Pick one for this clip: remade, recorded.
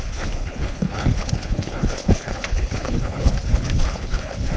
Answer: remade